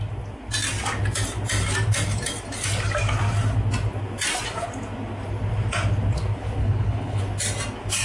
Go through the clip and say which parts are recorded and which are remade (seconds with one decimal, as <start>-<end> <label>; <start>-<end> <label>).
0.0-6.6 recorded; 6.6-7.2 remade; 7.2-8.0 recorded